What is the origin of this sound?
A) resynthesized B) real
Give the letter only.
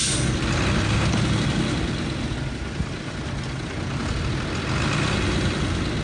B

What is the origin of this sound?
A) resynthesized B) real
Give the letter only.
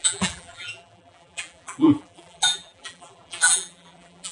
A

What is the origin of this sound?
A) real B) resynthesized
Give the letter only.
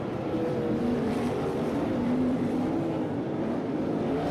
B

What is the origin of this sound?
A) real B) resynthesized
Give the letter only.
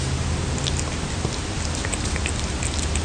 A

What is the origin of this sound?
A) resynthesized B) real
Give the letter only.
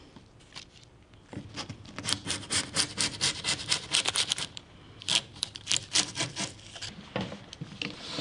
A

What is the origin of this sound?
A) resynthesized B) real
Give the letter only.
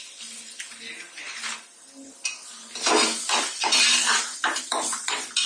B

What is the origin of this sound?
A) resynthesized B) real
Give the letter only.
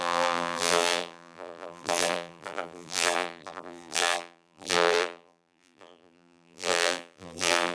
A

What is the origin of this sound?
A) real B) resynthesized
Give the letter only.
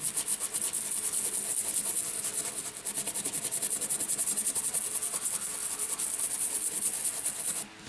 A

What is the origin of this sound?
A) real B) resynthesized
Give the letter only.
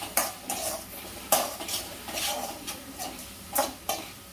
B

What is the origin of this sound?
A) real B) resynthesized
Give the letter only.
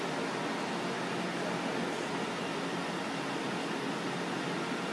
A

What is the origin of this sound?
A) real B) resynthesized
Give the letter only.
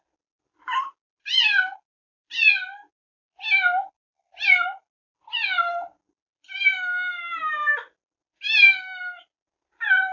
A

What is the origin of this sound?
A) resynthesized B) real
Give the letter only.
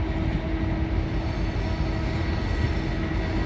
B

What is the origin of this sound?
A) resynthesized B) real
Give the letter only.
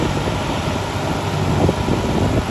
B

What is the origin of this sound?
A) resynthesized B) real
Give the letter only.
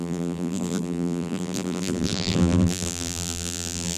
A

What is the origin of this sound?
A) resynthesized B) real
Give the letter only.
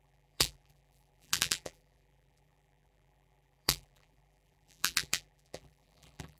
A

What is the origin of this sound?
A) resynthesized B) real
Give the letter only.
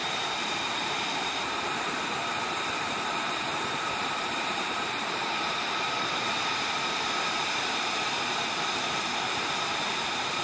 A